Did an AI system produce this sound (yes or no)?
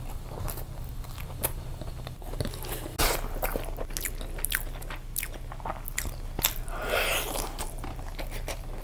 no